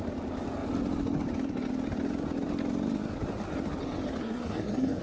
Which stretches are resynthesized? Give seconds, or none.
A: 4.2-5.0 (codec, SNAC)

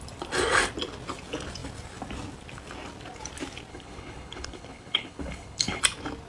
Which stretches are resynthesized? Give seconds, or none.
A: 3.7-5.8 (codec, HILCodec)